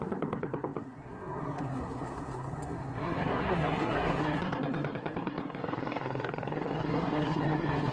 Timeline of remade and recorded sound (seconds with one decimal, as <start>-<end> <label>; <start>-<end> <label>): 0.0-7.9 remade